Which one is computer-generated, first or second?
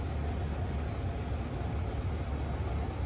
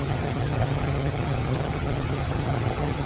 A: second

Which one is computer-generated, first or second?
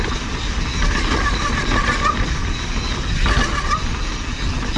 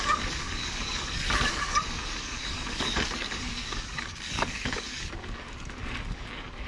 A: second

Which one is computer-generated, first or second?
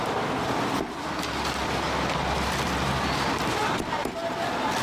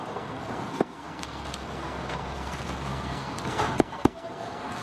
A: second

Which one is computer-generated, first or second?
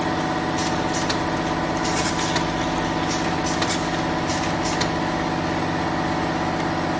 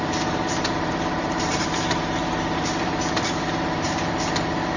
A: second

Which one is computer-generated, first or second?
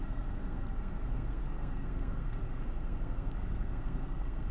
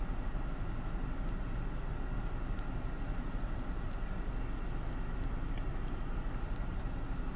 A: first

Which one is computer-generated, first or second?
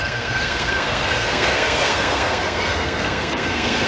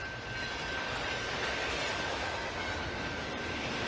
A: first